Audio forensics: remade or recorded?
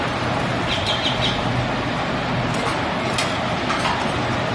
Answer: recorded